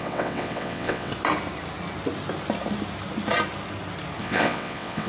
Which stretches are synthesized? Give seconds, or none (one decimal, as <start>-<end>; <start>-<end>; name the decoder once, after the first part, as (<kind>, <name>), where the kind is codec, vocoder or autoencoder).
0.0-1.1 (vocoder, WaveNeXt); 4.2-5.1